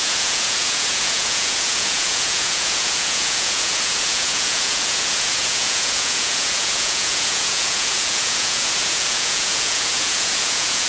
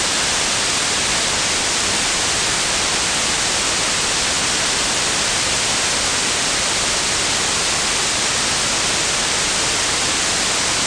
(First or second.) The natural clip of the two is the second